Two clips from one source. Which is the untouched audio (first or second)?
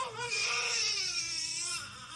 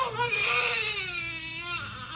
second